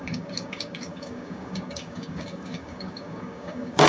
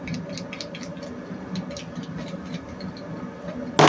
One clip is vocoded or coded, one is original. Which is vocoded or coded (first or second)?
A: first